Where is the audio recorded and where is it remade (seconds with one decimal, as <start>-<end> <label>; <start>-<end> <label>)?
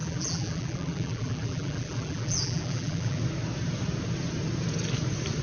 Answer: 0.0-3.2 remade; 3.2-5.4 recorded